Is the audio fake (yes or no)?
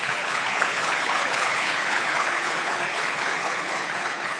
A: yes